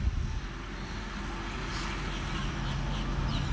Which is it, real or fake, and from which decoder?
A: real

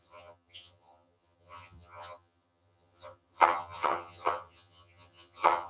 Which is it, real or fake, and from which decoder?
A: fake, vocoder, HiFi-GAN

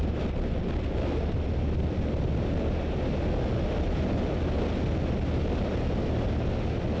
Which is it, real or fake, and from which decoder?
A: real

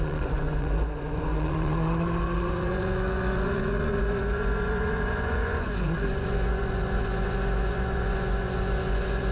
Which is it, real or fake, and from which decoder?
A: fake, vocoder, Vocos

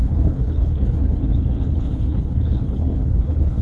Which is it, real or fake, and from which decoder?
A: fake, codec, HILCodec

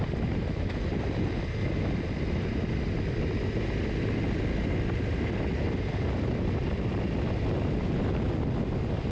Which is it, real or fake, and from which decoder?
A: real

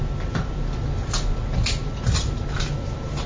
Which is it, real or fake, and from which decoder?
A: real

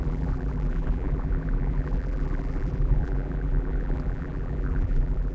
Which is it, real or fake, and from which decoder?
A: fake, vocoder, BigVGAN v2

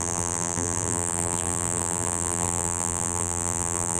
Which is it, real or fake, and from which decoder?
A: fake, vocoder, BigVGAN v2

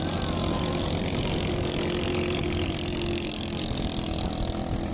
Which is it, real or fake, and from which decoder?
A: real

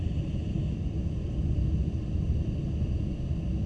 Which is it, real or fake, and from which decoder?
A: real